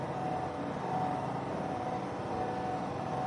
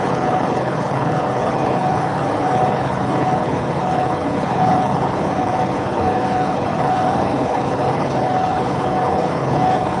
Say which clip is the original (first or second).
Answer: first